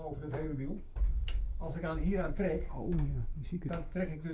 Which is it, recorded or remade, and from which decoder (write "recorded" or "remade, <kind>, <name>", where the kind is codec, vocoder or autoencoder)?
remade, codec, DAC